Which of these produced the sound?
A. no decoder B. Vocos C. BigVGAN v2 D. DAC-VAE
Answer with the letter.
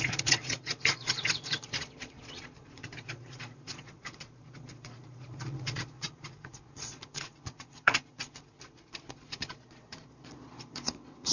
B